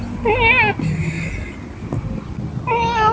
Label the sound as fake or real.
real